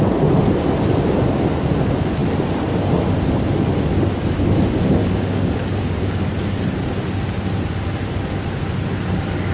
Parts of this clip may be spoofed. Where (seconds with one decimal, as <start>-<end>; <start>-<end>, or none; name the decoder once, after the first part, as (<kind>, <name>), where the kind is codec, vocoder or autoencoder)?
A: 5.0-6.3 (codec, DAC)